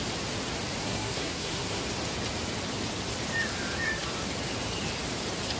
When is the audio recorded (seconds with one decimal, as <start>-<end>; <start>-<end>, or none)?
0.0-0.8; 1.8-5.6